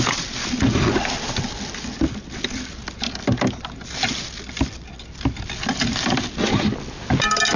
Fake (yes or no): no